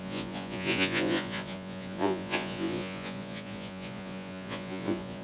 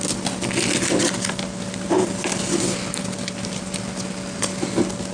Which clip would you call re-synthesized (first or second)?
first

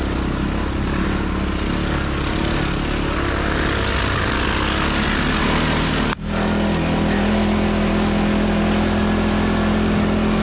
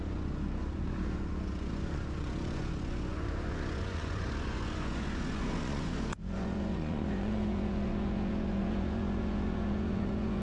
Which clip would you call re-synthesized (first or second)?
second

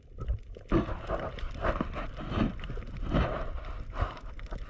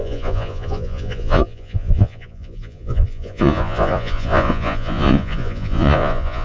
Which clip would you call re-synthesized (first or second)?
second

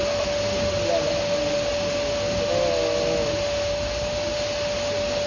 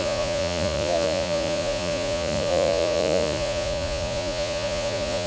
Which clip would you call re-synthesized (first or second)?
second